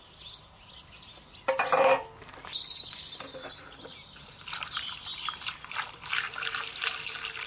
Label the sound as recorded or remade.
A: recorded